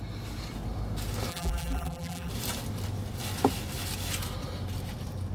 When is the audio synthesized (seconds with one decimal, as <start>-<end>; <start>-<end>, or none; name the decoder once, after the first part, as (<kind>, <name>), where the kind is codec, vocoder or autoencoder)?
1.3-2.3 (vocoder, BigVGAN v2)